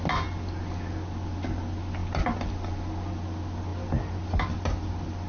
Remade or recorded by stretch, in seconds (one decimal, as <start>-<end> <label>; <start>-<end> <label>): 0.0-5.3 recorded